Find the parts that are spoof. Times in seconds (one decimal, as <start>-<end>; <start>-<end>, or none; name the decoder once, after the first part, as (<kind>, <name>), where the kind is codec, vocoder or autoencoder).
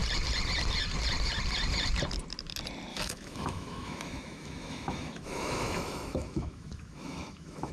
2.9-7.7 (autoencoder, DAC-VAE)